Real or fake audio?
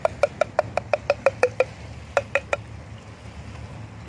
real